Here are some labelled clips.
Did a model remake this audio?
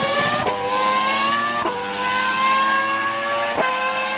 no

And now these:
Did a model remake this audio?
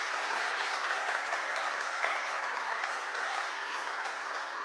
yes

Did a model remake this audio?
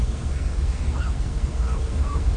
yes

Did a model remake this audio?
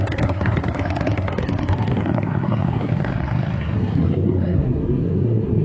yes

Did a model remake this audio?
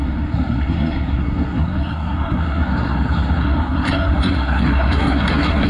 yes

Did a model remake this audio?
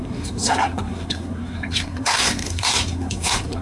yes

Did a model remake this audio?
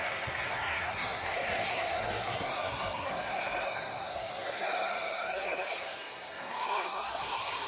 yes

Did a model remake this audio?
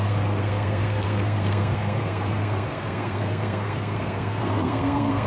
yes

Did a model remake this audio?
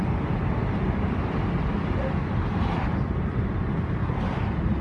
no